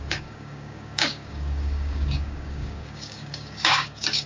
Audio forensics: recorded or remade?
remade